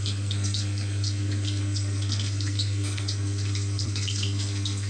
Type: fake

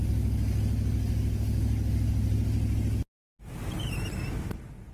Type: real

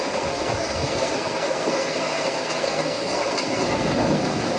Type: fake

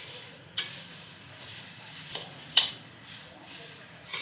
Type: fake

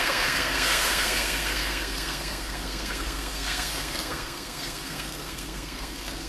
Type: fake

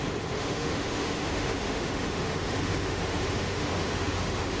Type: fake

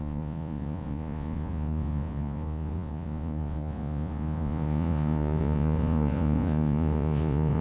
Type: fake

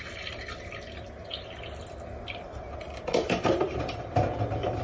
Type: real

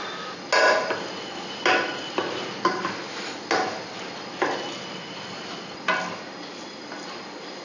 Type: real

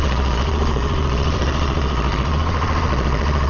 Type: fake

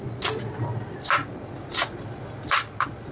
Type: real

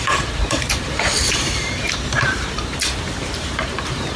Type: fake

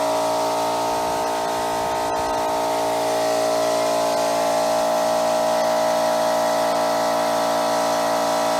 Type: real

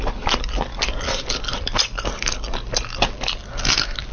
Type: real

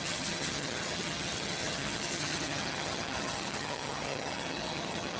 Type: fake